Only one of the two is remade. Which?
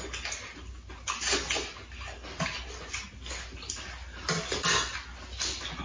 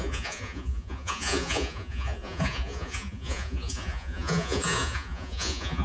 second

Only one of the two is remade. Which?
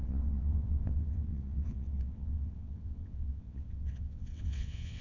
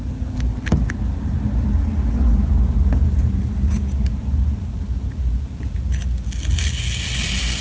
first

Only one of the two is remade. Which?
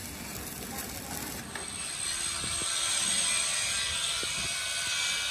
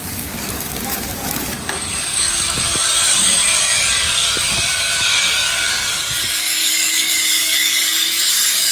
second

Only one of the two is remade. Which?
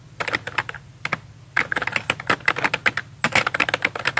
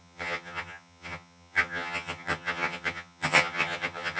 second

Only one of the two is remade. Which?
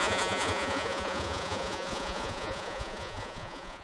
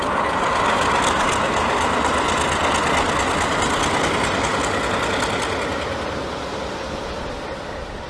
first